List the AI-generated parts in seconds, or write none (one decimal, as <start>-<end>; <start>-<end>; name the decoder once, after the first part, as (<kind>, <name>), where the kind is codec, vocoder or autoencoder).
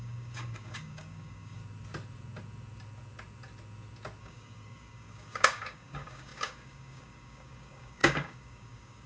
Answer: 0.0-1.6 (codec, DAC); 4.2-9.1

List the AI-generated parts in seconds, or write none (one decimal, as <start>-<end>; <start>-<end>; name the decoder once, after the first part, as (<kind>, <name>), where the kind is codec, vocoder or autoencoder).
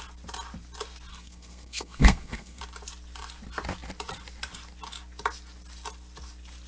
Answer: 1.1-2.6 (codec, SNAC)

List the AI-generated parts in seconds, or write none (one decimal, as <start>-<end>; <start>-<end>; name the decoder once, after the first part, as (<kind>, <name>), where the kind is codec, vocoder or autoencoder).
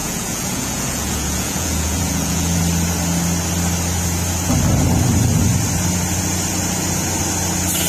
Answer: 0.0-2.6 (vocoder, Vocos)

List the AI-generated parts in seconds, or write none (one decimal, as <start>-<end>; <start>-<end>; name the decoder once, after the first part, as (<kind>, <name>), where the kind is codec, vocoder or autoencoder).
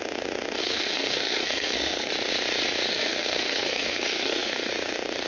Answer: 0.6-2.1 (codec, SNAC); 2.9-4.7